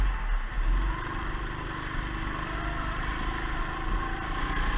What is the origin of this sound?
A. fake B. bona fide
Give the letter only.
B